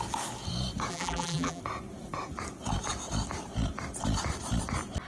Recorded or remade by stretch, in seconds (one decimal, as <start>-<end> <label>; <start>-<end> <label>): 0.0-0.9 recorded; 0.9-1.6 remade; 1.6-5.1 recorded